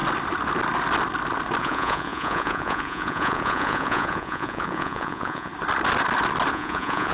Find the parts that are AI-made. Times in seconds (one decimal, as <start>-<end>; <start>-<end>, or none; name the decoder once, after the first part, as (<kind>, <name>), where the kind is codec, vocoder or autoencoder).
1.6-5.5 (vocoder, Vocos); 6.5-7.1